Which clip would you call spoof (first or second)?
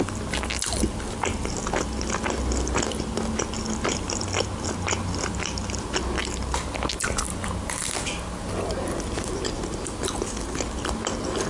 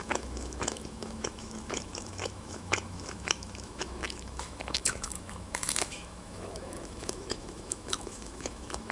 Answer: second